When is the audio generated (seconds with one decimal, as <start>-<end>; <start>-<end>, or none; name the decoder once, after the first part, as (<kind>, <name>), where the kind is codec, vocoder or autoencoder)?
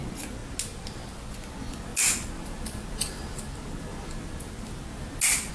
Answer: 0.0-0.4 (vocoder, Vocos); 1.2-1.9